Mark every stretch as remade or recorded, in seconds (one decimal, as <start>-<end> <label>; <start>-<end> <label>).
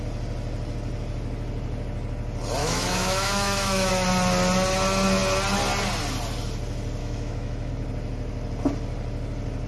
0.0-2.6 recorded; 2.6-3.9 remade; 3.9-7.0 recorded; 7.0-7.7 remade; 7.7-9.7 recorded